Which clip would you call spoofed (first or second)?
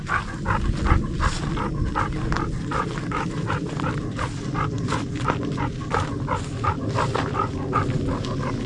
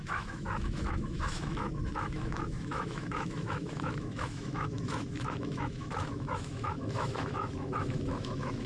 second